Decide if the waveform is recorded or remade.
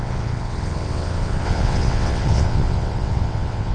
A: remade